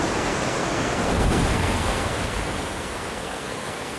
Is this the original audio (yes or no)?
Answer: no